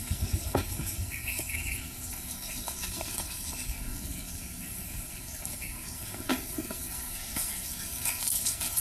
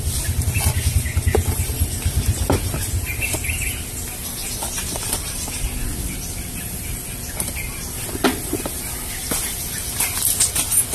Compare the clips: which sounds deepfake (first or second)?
first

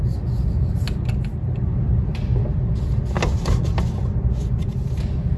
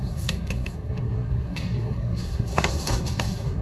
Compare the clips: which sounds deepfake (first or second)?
second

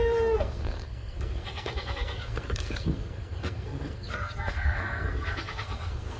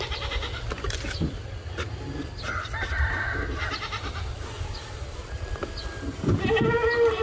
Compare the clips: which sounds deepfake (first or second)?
first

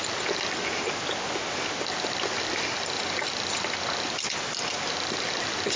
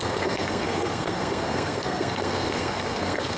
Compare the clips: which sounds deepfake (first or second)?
second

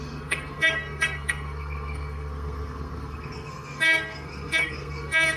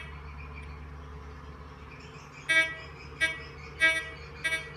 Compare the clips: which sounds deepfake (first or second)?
first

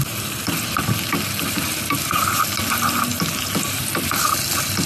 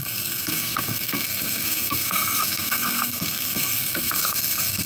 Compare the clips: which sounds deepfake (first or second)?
second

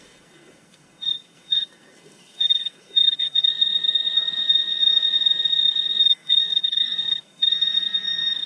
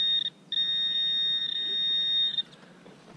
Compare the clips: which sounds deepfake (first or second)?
first